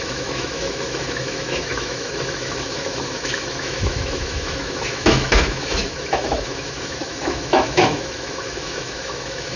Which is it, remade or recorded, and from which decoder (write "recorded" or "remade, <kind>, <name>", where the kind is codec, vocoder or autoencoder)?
remade, autoencoder, DAC-VAE